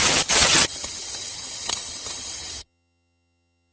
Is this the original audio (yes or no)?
no